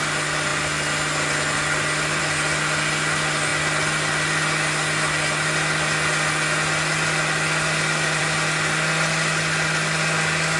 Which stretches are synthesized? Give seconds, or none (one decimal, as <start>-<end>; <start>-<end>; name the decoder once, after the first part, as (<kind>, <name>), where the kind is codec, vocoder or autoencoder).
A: none